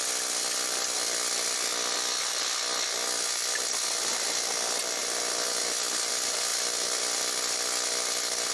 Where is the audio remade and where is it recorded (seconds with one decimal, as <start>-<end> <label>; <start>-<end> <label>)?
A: 0.0-8.5 recorded